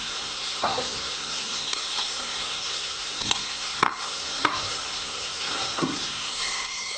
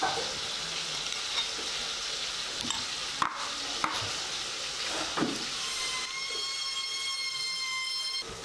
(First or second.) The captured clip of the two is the second